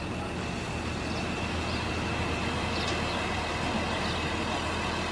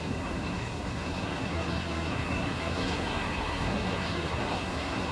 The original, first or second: first